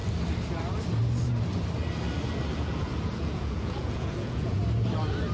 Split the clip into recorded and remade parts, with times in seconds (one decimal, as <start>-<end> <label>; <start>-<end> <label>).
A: 0.0-2.5 recorded; 2.5-4.6 remade; 4.6-5.3 recorded

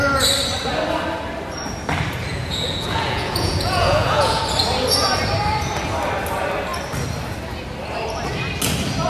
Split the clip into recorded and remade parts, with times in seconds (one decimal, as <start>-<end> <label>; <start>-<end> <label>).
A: 0.0-2.3 recorded; 2.3-4.4 remade; 4.4-9.1 recorded

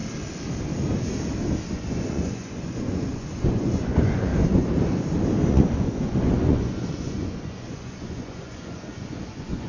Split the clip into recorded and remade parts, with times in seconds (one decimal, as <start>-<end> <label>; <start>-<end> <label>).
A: 0.0-1.7 recorded; 1.7-4.3 remade; 4.3-5.5 recorded; 5.5-9.7 remade

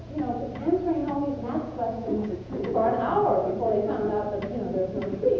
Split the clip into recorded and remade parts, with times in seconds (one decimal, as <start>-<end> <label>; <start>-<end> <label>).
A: 0.0-1.0 recorded; 1.0-4.2 remade; 4.2-5.4 recorded